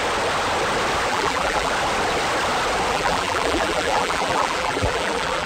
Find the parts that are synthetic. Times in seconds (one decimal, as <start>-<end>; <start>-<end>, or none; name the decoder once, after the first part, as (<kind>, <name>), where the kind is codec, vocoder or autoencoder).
1.1-1.7 (vocoder, BigVGAN v2); 2.9-5.5